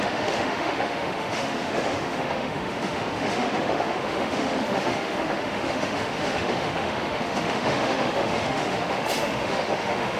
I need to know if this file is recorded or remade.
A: remade